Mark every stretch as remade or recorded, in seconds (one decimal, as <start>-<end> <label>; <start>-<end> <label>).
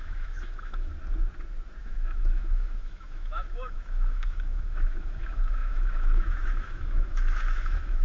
0.0-0.9 remade; 0.9-1.8 recorded; 1.8-8.0 remade